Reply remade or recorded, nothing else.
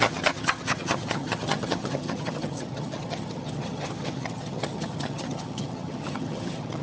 remade